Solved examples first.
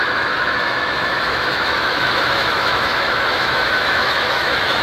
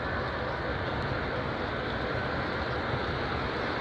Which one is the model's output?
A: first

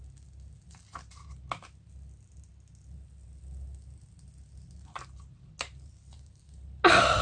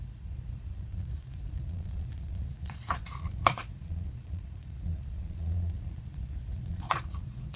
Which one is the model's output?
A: second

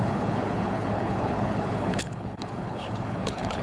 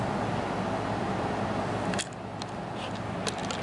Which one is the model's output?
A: first